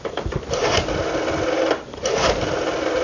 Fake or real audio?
real